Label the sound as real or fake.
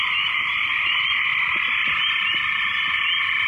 real